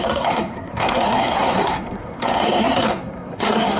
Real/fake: fake